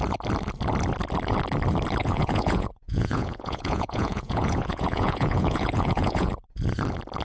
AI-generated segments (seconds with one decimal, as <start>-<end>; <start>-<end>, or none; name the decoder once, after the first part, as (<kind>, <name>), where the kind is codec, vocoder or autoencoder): 2.0-6.3 (vocoder, Vocos)

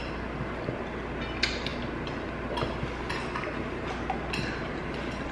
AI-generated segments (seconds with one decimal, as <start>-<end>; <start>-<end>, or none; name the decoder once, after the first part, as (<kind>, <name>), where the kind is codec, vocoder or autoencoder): none

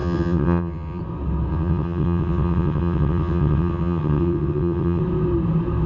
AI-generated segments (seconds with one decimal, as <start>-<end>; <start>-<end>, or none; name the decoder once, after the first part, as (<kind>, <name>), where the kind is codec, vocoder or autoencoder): 0.0-1.0 (vocoder, WaveNeXt); 1.5-5.0

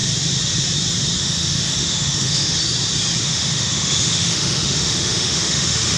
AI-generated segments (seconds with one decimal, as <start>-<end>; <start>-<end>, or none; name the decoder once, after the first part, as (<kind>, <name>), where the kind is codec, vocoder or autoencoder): 1.2-2.6 (autoencoder, DAC-VAE); 3.2-6.0

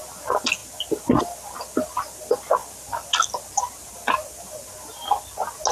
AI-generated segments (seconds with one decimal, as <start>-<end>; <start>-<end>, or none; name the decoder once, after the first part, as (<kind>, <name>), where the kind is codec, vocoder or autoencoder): none

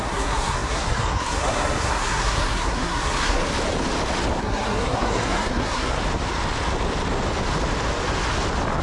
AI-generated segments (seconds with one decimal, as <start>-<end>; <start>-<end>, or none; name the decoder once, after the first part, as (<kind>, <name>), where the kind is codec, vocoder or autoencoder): 0.0-3.4 (codec, SNAC); 4.4-6.0

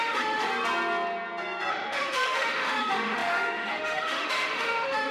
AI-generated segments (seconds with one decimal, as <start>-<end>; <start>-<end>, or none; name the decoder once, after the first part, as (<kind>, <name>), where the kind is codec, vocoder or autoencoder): 0.0-0.5 (autoencoder, DAC-VAE); 1.7-5.1